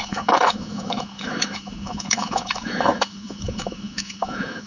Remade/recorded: remade